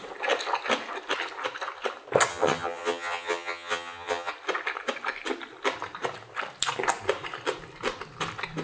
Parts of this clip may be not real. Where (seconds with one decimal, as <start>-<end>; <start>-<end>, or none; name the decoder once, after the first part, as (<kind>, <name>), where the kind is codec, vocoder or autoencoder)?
2.3-4.3 (vocoder, HiFi-GAN)